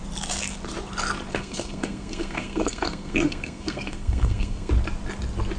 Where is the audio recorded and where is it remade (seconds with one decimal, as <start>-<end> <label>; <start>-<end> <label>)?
0.0-1.3 recorded; 1.3-4.7 remade; 4.7-5.6 recorded